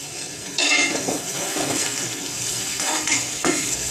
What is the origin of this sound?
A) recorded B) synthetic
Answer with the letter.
B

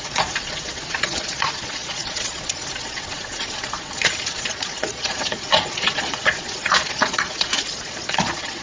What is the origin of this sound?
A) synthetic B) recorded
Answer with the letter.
A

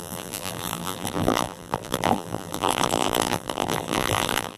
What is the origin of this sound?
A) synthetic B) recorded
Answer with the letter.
A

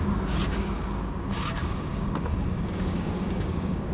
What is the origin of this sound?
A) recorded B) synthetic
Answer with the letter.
B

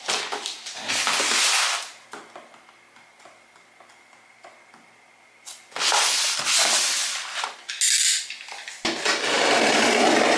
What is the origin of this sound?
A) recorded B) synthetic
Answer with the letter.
A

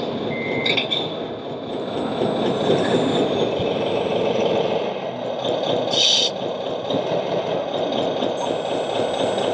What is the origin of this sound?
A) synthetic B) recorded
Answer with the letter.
B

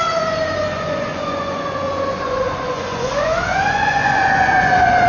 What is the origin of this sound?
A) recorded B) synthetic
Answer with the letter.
B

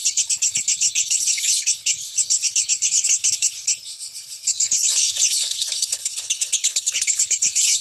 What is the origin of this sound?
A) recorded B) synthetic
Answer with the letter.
B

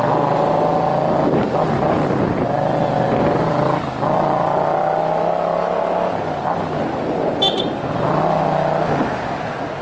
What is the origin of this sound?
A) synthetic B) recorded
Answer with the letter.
B